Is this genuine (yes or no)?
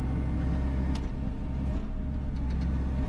yes